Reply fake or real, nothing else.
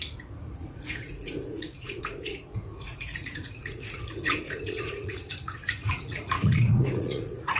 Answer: fake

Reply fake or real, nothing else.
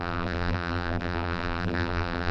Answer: fake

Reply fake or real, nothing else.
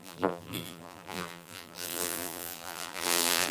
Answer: fake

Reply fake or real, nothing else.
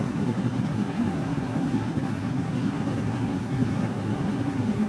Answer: fake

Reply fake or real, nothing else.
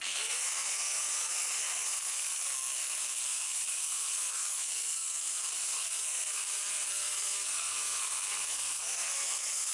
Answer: fake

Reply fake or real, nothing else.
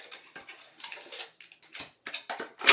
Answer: real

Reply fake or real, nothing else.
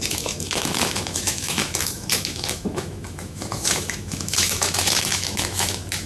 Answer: fake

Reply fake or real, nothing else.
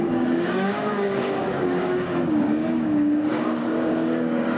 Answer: fake